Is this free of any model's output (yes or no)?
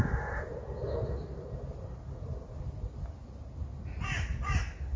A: yes